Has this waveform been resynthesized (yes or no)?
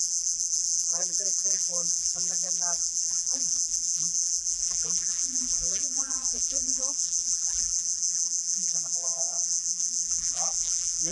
yes